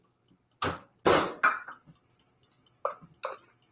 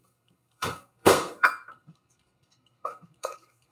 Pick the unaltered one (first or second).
first